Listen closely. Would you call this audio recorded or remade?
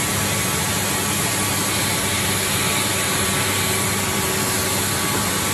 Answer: recorded